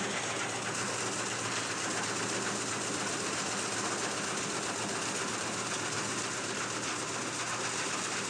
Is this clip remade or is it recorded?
recorded